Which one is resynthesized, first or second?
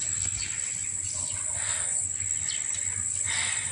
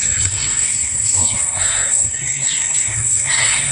second